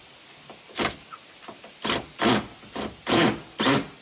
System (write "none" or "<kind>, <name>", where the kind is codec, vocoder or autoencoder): none